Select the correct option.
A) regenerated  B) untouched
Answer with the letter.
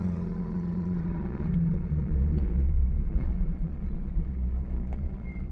A